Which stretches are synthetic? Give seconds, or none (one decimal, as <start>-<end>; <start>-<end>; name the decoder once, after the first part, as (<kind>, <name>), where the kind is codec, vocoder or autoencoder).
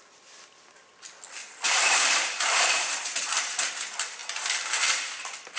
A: 1.4-3.7 (vocoder, BigVGAN v2); 4.2-5.6